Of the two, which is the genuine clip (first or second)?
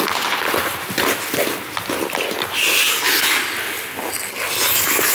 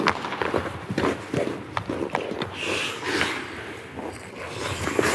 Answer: first